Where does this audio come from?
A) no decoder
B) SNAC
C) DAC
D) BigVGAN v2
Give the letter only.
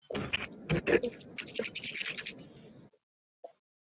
A